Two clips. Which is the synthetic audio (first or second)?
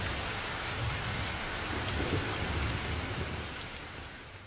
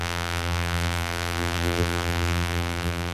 second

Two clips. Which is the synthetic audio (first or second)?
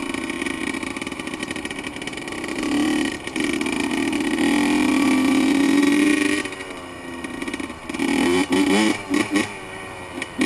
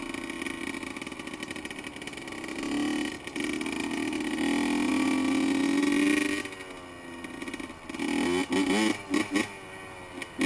first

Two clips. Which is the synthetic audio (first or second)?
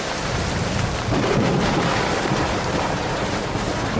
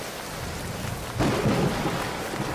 first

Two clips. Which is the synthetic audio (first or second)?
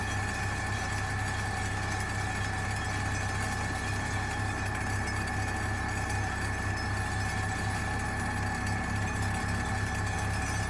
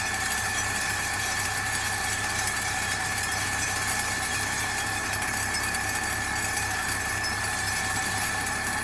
second